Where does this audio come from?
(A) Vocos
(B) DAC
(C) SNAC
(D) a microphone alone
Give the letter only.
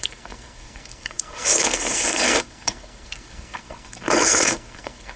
C